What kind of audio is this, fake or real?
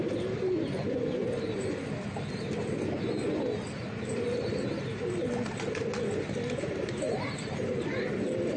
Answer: real